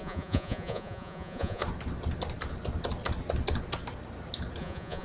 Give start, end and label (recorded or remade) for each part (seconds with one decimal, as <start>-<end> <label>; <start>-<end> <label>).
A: 0.0-1.6 remade; 1.6-4.6 recorded; 4.6-5.0 remade